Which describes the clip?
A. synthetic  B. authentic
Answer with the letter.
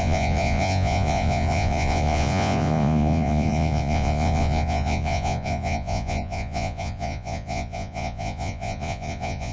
A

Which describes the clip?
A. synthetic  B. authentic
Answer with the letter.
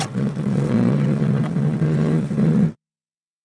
A